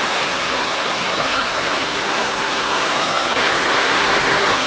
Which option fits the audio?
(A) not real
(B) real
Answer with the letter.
A